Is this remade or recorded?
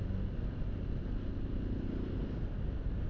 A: recorded